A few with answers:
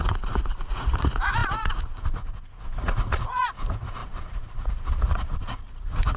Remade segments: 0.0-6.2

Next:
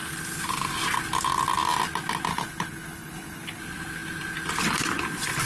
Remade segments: 2.3-3.6

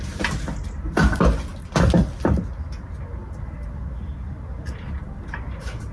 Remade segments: none

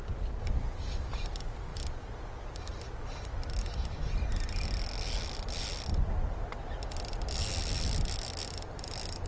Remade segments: none